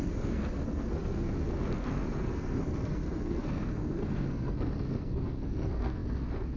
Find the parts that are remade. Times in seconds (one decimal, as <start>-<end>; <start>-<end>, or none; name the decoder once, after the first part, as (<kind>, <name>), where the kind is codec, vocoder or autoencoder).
0.0-6.6 (codec, SNAC)

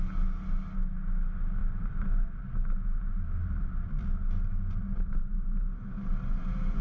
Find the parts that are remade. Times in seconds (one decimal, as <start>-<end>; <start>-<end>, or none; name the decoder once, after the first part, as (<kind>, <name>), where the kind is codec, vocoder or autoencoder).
1.6-3.7 (vocoder, BigVGAN v2); 4.8-6.8

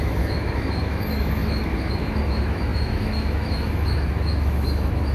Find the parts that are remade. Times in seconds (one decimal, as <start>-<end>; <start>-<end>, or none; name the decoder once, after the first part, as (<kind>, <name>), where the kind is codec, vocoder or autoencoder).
0.0-5.1 (autoencoder, DAC-VAE)

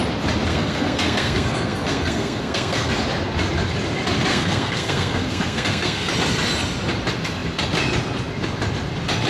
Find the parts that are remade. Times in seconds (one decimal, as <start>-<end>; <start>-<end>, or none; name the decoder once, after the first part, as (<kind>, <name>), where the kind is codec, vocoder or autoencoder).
0.5-2.9 (codec, SNAC); 4.3-6.1

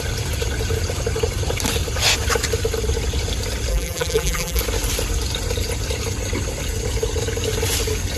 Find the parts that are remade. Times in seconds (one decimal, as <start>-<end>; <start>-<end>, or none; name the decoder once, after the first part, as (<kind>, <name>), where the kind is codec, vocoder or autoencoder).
3.7-4.6 (vocoder, BigVGAN v2)

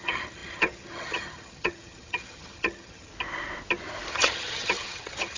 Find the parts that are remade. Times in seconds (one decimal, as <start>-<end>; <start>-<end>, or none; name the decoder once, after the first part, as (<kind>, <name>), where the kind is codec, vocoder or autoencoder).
0.0-3.1 (vocoder, HiFi-GAN); 4.1-5.4